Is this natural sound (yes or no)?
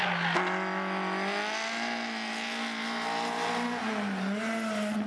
yes